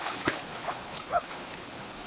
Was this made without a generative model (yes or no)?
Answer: no